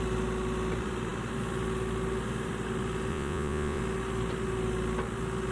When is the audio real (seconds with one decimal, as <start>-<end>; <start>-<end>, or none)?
0.0-3.1; 3.8-5.5